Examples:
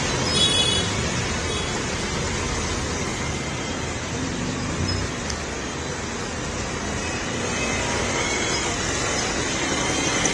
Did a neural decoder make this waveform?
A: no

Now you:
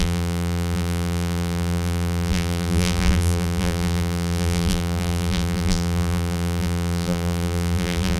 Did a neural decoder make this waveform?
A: yes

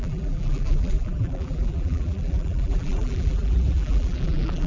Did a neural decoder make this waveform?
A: yes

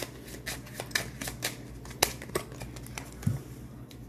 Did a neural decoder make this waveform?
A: no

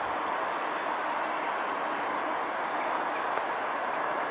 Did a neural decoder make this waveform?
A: no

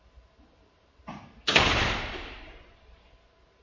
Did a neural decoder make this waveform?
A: yes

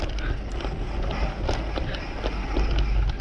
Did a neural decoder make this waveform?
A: no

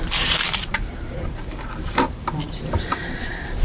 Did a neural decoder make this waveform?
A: yes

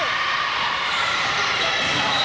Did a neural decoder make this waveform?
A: yes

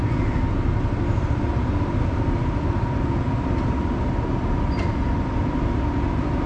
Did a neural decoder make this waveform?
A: no